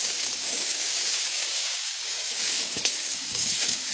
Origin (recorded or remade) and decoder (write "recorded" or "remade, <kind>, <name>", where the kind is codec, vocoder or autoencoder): remade, codec, DAC